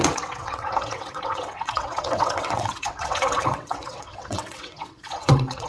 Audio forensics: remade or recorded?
remade